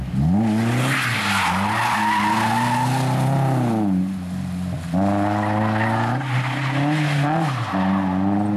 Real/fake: real